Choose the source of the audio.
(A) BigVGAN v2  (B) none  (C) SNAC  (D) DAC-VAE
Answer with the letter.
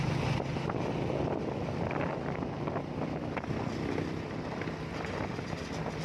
B